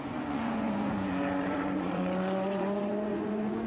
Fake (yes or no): yes